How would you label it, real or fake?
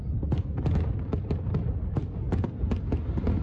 real